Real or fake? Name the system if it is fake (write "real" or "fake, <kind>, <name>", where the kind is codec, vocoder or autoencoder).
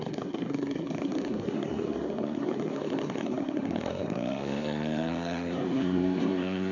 fake, codec, SNAC